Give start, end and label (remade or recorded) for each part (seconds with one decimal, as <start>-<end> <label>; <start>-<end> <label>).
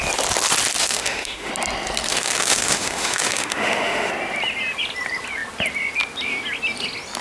0.0-0.8 recorded; 0.8-1.5 remade; 1.5-2.1 recorded; 2.1-4.1 remade; 4.1-7.2 recorded